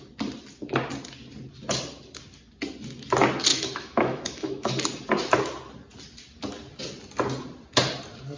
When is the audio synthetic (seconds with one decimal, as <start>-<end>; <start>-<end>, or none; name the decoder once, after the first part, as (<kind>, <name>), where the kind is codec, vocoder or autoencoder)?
3.5-4.7 (autoencoder, DAC-VAE)